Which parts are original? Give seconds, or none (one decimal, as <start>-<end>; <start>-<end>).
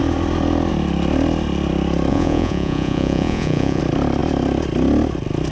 0.0-2.1; 3.8-5.5